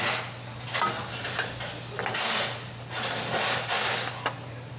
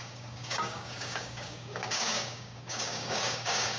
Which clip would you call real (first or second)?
first